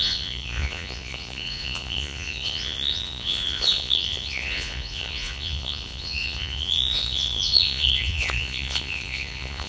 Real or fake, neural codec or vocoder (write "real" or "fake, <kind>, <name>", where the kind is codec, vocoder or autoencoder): fake, vocoder, Vocos